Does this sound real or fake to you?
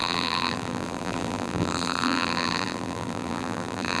fake